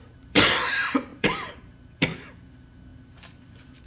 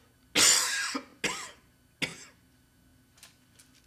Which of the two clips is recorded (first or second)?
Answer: second